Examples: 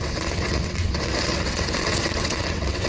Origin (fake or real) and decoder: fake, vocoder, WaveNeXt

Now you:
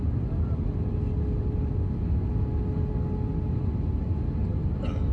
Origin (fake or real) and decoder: real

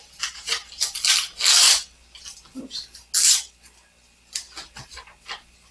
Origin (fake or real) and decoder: real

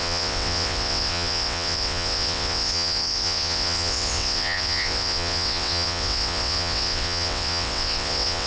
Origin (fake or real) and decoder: fake, vocoder, WaveNeXt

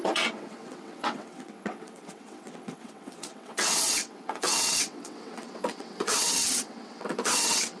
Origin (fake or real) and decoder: fake, vocoder, WaveNeXt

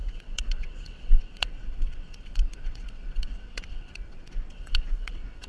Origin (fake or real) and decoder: fake, vocoder, WaveNeXt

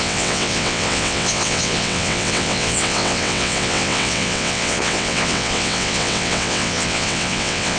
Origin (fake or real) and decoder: fake, vocoder, WaveNeXt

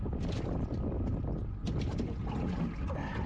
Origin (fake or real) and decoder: real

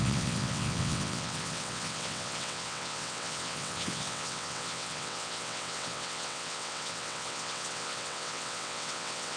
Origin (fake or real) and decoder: fake, vocoder, WaveNeXt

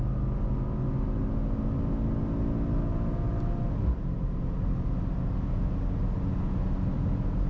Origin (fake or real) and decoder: real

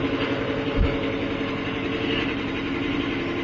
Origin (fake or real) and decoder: real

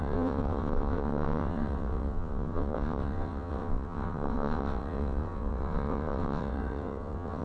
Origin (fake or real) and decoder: fake, vocoder, WaveNeXt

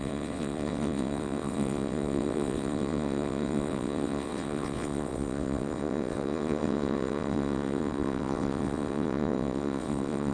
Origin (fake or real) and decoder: fake, vocoder, WaveNeXt